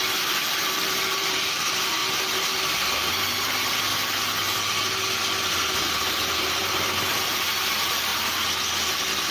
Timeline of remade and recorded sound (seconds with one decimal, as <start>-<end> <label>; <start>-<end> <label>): 0.0-2.0 remade; 2.0-2.6 recorded; 2.6-3.9 remade; 3.9-5.2 recorded; 5.2-8.1 remade; 8.1-9.3 recorded